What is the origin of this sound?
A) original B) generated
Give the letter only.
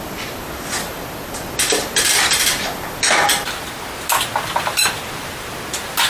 A